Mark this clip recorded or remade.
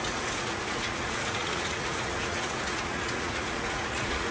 remade